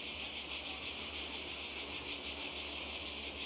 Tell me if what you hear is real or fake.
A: real